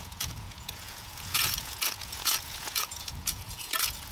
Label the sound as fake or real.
fake